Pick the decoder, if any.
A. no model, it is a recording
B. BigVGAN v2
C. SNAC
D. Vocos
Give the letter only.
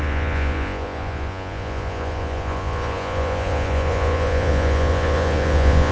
D